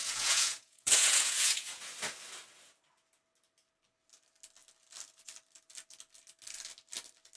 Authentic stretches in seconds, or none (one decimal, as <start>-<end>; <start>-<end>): 1.8-7.4